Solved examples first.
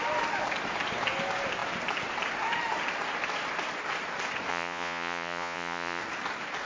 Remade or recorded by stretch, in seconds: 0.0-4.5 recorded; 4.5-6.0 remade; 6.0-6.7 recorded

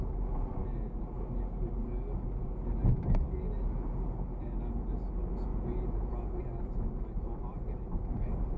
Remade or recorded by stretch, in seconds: 0.0-5.5 recorded; 5.5-6.4 remade; 6.4-8.6 recorded